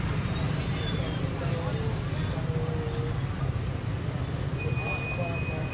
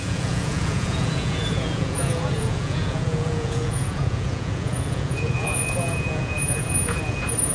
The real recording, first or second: first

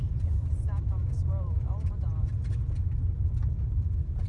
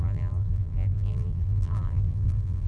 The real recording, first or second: first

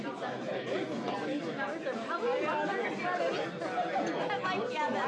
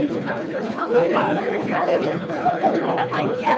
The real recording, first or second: first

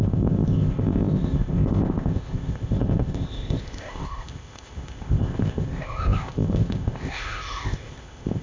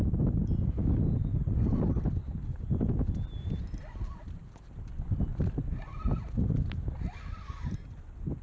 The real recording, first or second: second